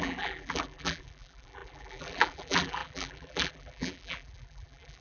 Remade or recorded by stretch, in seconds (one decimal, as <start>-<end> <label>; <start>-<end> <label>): 0.0-5.0 remade